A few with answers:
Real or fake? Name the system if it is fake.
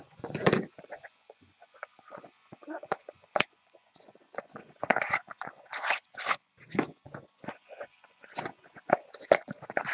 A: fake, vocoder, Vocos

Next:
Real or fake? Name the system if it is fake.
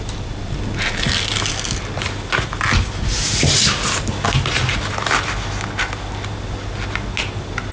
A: real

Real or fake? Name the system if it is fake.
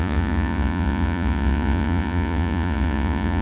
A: fake, vocoder, Vocos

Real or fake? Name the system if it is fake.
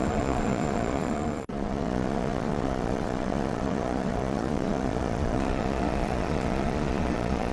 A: fake, vocoder, Vocos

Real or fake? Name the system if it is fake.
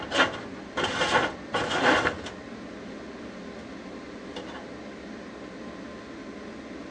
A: real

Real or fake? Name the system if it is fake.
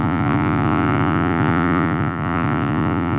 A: fake, vocoder, Vocos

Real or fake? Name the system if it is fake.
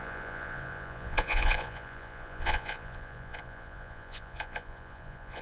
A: fake, vocoder, Vocos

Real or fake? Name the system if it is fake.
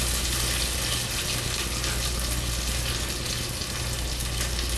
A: real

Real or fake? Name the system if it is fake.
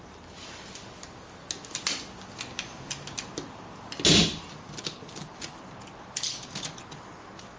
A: real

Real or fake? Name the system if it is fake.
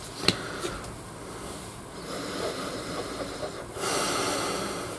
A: real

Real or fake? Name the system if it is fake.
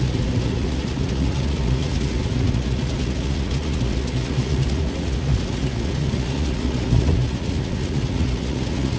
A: fake, vocoder, Vocos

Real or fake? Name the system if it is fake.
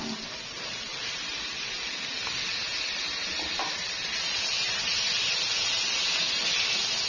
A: real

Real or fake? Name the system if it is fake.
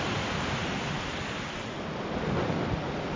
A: real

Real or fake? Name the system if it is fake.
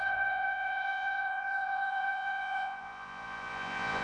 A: fake, vocoder, Vocos